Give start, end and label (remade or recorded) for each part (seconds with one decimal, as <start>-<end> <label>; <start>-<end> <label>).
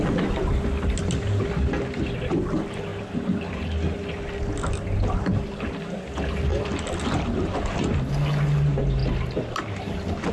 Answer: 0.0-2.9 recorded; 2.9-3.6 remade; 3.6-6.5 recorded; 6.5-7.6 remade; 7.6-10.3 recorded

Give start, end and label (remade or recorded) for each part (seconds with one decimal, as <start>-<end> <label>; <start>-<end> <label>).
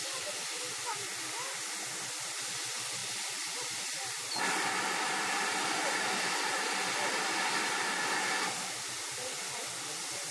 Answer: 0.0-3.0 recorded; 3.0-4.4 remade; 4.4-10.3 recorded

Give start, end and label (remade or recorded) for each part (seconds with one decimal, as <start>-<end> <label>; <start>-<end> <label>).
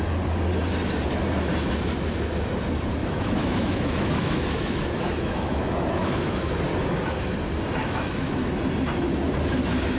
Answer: 0.0-3.0 recorded; 3.0-6.6 remade; 6.6-7.8 recorded; 7.8-8.5 remade; 8.5-10.0 recorded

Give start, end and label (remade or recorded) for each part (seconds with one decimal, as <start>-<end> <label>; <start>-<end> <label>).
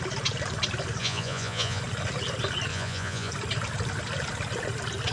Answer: 0.0-1.0 recorded; 1.0-1.8 remade; 1.8-2.7 recorded; 2.7-3.3 remade; 3.3-5.1 recorded